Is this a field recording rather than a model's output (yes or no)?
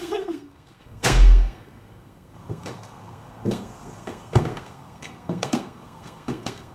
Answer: no